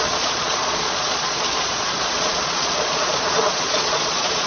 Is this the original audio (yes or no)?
no